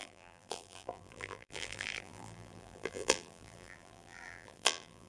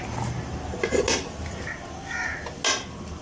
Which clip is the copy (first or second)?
first